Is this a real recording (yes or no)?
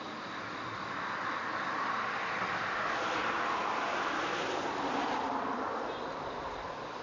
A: yes